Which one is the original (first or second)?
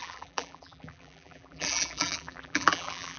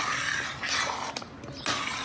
second